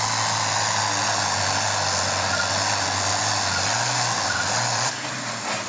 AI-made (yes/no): no